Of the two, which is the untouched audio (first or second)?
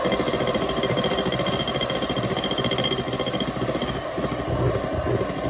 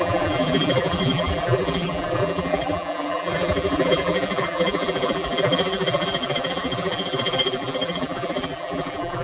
first